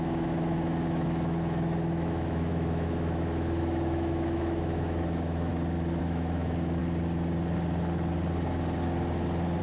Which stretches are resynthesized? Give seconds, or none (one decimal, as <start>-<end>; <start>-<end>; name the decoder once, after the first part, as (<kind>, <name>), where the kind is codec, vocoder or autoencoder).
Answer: 0.0-5.5 (autoencoder, DAC-VAE); 6.0-6.8